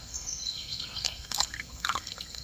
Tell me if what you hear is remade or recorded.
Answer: remade